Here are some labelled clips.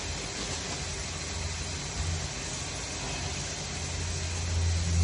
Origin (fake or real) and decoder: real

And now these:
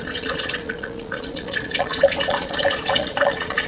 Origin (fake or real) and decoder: fake, vocoder, Vocos